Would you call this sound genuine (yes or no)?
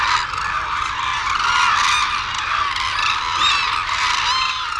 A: yes